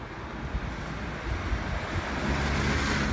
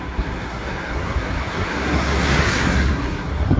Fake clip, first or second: second